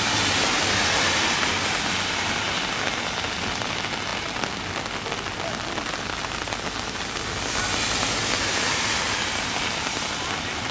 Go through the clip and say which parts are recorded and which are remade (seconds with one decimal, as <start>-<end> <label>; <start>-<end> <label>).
0.0-10.7 recorded